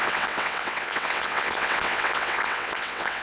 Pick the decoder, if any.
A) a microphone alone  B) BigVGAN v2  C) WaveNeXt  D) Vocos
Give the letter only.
C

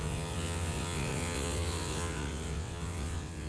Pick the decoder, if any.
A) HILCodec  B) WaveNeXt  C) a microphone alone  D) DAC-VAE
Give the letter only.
B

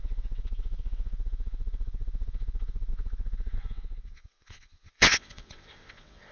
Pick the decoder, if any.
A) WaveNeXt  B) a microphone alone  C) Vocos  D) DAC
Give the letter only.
A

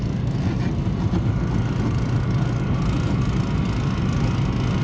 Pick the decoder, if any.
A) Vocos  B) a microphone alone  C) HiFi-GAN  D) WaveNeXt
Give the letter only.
B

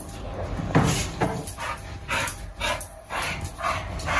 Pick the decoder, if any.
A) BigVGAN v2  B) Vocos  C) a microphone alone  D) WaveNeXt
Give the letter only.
C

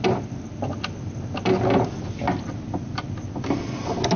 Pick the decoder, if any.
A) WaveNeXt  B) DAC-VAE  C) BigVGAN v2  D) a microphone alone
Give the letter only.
D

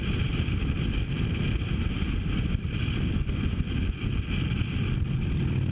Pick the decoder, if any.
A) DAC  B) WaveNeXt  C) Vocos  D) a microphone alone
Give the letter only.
D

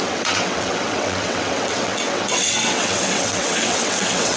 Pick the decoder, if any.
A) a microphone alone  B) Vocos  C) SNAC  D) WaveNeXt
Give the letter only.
D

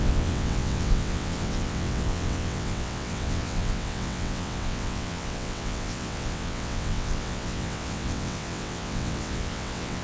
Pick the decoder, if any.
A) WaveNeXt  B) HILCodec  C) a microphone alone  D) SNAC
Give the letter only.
A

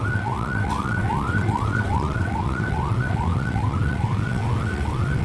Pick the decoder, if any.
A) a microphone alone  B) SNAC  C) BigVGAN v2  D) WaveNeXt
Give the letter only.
D